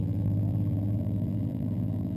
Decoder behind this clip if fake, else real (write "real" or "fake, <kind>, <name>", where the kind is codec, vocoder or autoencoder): fake, vocoder, BigVGAN v2